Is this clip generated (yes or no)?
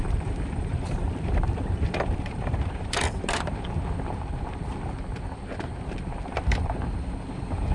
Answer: yes